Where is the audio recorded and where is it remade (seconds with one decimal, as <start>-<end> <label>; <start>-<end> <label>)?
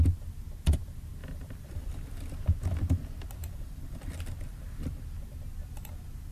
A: 0.0-1.2 recorded; 1.2-2.4 remade; 2.4-3.4 recorded; 3.4-4.0 remade; 4.0-6.3 recorded